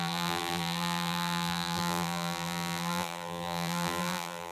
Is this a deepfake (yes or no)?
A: yes